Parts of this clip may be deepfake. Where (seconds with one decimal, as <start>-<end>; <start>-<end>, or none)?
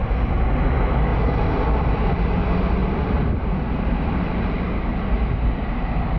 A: none